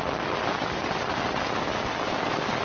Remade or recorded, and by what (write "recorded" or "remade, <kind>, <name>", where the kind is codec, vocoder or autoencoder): recorded